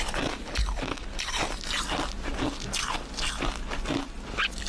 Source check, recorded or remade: recorded